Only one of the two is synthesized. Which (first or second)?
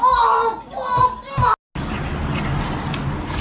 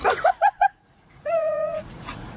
second